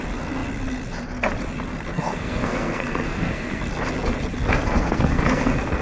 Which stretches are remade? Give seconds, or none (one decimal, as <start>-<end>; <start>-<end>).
1.9-3.6; 4.5-5.8